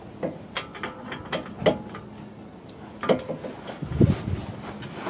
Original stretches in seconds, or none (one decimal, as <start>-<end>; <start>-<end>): 0.0-5.1

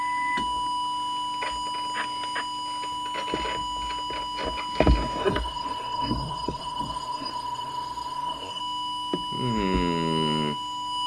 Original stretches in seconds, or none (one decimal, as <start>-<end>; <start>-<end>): 0.0-5.2; 8.6-11.1

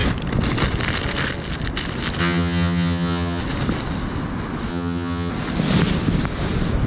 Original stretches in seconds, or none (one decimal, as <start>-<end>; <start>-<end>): 0.0-2.2; 3.4-4.7; 5.3-6.9

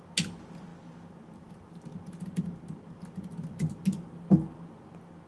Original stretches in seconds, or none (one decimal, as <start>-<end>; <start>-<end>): 0.0-5.3